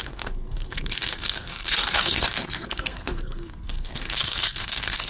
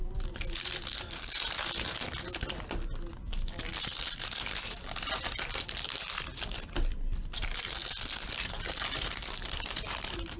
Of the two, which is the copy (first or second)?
first